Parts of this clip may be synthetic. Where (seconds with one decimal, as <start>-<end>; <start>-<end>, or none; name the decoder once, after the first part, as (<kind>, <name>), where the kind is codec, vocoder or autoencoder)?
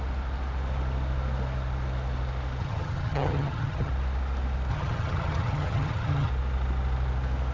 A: 2.6-3.9 (vocoder, HiFi-GAN); 4.7-6.3